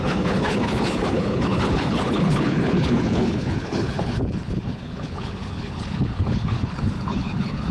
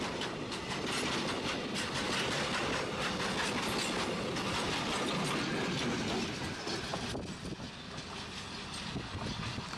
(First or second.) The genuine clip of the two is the second